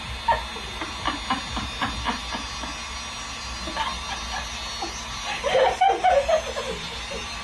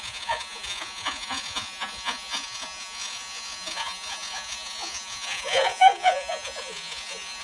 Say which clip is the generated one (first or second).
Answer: second